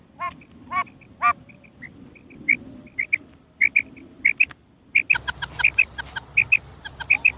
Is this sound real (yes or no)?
yes